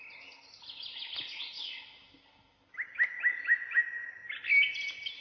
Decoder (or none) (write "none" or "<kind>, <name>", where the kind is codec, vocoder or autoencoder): none